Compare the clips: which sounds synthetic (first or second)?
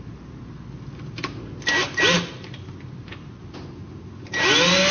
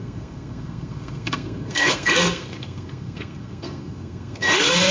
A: second